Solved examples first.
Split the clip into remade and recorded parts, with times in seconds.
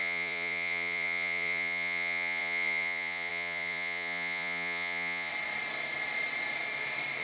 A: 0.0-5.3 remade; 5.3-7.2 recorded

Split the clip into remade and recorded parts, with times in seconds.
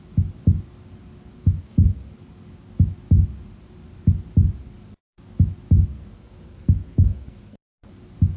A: 0.0-1.4 recorded; 1.4-2.1 remade; 2.1-5.9 recorded; 5.9-7.9 remade; 7.9-8.4 recorded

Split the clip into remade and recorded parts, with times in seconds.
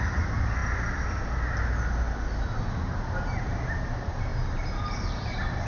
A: 0.0-4.3 recorded; 4.3-5.7 remade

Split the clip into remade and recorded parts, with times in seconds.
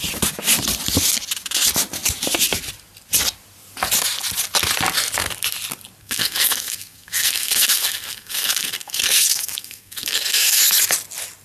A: 0.0-6.0 recorded; 6.0-10.6 remade; 10.6-11.4 recorded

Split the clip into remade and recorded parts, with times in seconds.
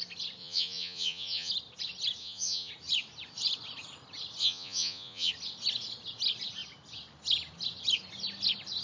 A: 0.0-0.4 recorded; 0.4-1.5 remade; 1.5-2.2 recorded; 2.2-2.7 remade; 2.7-4.4 recorded; 4.4-5.3 remade; 5.3-8.8 recorded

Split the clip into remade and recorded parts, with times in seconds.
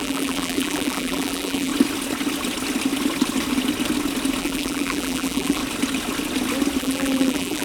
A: 0.0-1.7 remade; 1.7-4.4 recorded; 4.4-5.6 remade; 5.6-6.8 recorded; 6.8-7.6 remade